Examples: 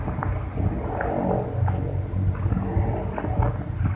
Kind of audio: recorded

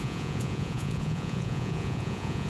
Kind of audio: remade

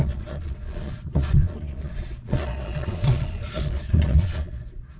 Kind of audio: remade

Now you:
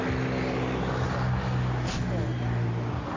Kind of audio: recorded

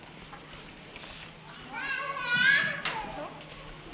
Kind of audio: recorded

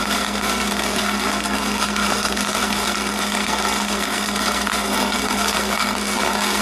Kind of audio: remade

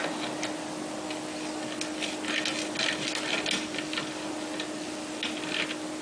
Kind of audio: recorded